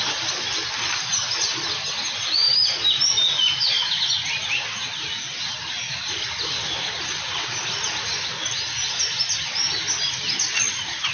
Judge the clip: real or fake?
real